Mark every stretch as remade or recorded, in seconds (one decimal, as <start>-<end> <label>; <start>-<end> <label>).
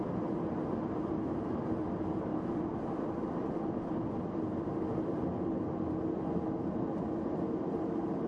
0.0-2.3 recorded; 2.3-6.2 remade; 6.2-8.3 recorded